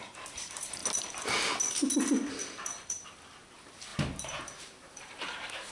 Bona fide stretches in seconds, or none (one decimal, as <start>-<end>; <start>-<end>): 0.8-2.3